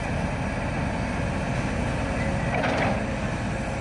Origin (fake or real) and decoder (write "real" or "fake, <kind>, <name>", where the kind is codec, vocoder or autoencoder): real